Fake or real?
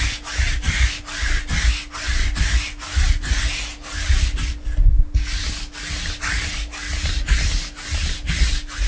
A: real